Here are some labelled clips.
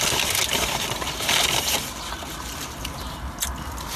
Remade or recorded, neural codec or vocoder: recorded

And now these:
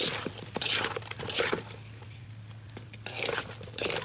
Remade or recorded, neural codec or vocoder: remade, vocoder, BigVGAN v2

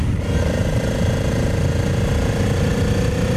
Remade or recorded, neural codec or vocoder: recorded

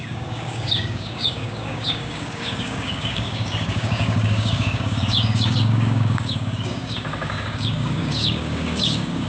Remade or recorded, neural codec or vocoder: remade, codec, DAC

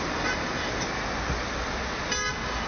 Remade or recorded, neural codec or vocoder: recorded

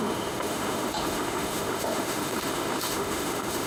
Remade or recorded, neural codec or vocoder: remade, autoencoder, DAC-VAE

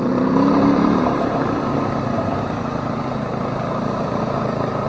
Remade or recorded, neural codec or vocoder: remade, vocoder, BigVGAN v2